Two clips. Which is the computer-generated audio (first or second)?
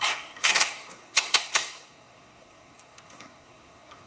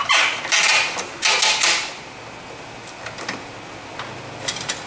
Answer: first